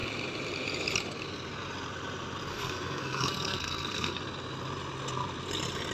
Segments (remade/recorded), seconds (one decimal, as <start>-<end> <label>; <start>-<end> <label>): 0.0-2.5 recorded; 2.5-4.2 remade; 4.2-5.9 recorded